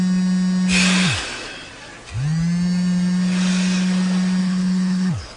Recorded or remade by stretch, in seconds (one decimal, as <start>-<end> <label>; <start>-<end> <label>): 0.0-4.4 recorded; 4.4-5.4 remade